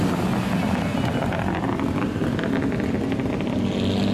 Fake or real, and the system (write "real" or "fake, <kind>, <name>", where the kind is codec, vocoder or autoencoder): real